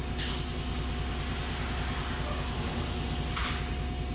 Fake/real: real